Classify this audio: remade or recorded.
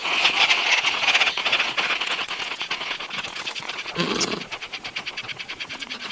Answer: remade